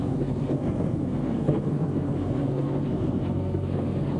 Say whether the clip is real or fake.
fake